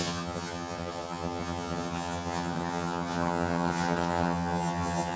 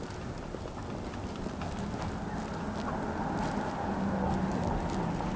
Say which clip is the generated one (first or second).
first